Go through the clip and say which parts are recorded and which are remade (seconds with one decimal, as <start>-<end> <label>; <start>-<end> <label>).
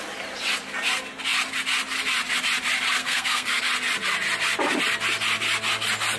0.0-3.0 recorded; 3.0-3.6 remade; 3.6-6.2 recorded